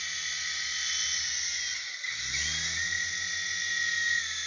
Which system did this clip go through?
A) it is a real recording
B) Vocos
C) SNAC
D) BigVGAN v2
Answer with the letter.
A